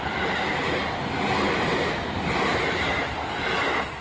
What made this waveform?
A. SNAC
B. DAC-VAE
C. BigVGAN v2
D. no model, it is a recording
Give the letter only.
D